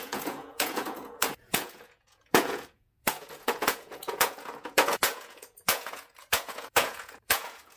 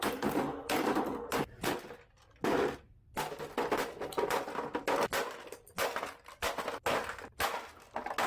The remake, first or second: first